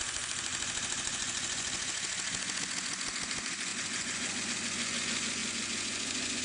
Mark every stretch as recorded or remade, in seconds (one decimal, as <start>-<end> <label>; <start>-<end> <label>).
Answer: 0.0-6.4 remade